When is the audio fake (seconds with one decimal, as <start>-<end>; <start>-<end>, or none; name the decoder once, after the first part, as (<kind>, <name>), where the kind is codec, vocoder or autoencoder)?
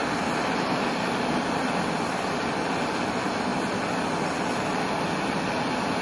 3.5-5.5 (vocoder, BigVGAN v2)